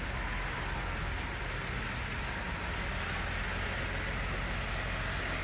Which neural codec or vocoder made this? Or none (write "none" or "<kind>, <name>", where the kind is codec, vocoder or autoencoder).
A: none